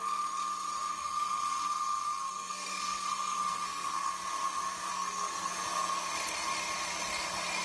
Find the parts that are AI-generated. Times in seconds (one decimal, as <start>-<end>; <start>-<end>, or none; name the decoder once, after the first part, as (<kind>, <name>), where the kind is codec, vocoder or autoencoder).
1.0-4.1 (codec, SNAC); 4.9-5.5